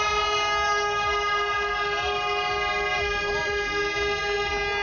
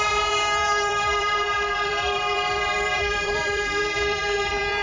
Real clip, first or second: first